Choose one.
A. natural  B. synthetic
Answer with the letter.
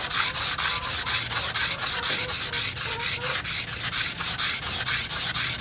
A